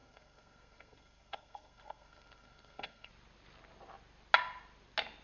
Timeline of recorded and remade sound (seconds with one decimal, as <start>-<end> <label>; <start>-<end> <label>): 0.0-3.1 remade; 3.1-5.2 recorded